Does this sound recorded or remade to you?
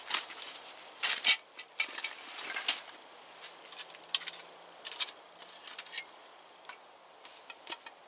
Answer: recorded